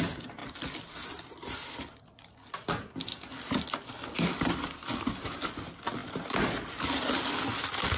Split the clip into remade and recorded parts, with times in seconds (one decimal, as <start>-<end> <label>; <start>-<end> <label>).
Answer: 0.0-8.0 recorded